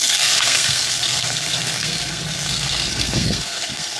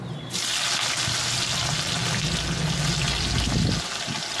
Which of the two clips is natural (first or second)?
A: second